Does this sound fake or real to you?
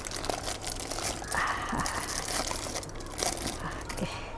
real